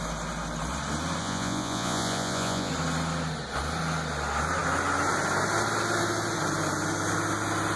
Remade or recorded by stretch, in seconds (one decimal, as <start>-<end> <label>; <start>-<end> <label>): 0.0-1.2 recorded; 1.2-2.7 remade; 2.7-7.8 recorded